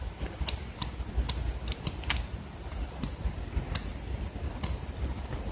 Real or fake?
real